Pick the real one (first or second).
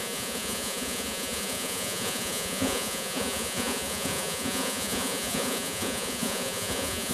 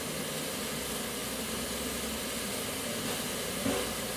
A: second